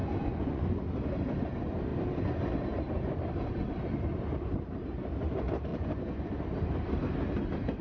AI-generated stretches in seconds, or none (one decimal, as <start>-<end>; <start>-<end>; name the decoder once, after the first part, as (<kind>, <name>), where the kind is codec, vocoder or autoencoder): 0.0-0.6 (vocoder, Vocos); 5.7-6.3